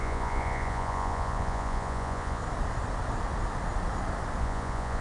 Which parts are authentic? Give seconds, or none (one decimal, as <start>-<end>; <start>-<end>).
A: 2.4-4.4